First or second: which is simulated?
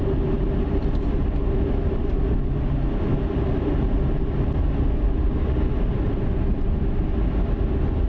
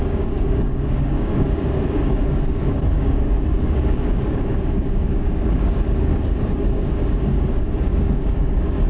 second